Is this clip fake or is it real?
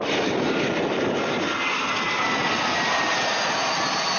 real